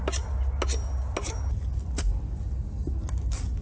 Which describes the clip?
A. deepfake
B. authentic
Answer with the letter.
B